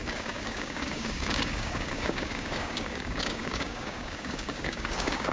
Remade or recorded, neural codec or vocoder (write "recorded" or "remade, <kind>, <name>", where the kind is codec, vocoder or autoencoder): remade, codec, DAC